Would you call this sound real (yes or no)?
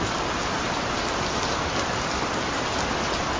yes